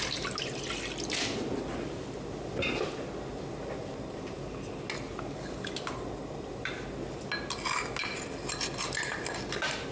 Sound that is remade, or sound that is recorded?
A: recorded